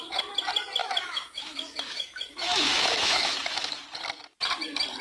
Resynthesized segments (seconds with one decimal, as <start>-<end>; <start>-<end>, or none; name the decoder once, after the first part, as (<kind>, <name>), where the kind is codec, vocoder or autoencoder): 0.8-3.8 (autoencoder, DAC-VAE)